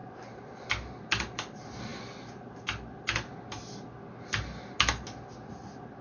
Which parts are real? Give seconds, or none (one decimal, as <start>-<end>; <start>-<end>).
0.0-6.0